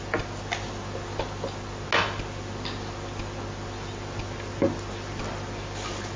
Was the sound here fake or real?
real